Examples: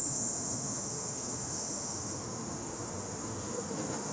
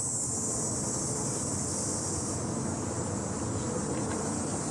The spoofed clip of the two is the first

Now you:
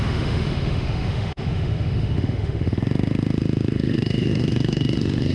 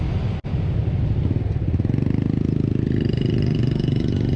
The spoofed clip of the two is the first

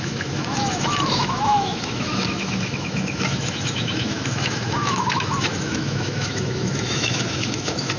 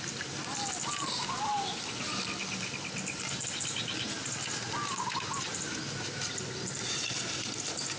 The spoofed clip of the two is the first